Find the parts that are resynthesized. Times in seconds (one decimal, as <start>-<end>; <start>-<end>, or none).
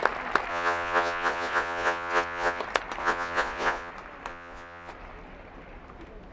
0.5-2.6; 3.0-3.9; 4.3-4.9